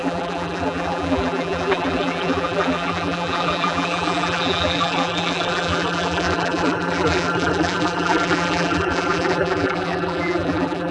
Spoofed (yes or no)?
yes